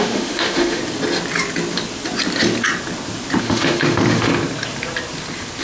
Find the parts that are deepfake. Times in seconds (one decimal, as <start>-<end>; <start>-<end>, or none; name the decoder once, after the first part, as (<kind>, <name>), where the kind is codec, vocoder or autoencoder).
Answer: 0.0-0.8 (autoencoder, DAC-VAE); 3.4-4.3

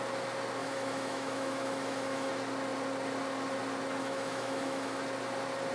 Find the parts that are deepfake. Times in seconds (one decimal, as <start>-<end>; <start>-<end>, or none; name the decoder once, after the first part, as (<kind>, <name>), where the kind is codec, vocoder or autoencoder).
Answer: 0.6-2.3 (autoencoder, DAC-VAE); 4.0-5.0

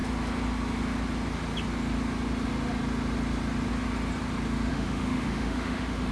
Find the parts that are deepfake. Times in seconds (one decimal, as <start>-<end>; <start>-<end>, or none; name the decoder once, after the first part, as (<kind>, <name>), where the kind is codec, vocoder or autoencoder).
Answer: 4.7-6.1 (autoencoder, DAC-VAE)

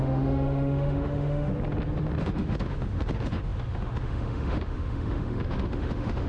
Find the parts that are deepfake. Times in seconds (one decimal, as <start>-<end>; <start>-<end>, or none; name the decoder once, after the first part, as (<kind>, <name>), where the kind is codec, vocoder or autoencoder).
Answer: 0.0-1.5 (autoencoder, DAC-VAE); 2.2-6.3

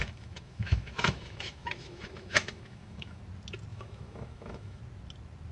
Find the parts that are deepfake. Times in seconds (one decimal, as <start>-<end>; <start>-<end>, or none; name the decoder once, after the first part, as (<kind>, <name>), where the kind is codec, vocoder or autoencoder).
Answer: 0.0-3.2 (autoencoder, DAC-VAE); 3.7-4.8